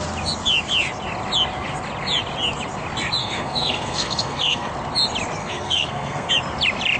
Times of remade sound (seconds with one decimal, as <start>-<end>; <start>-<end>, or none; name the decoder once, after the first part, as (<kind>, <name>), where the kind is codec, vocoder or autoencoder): 3.2-4.7 (codec, SNAC); 5.4-6.3